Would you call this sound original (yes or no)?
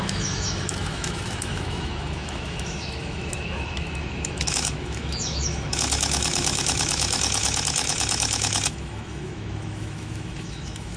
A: no